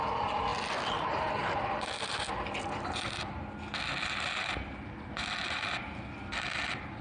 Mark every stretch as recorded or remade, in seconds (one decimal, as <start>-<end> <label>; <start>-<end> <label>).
0.0-7.0 recorded